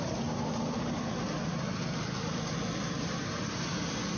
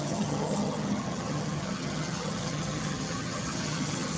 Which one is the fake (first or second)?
second